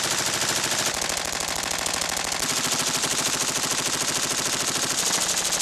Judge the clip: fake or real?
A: real